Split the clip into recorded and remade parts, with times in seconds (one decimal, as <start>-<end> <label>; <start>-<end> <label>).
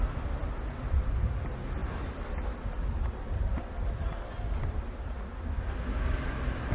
0.0-6.7 recorded